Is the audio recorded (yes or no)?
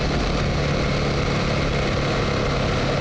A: yes